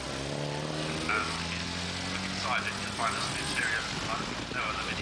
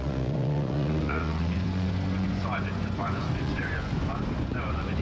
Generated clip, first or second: second